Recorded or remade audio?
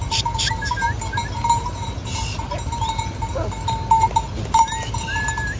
recorded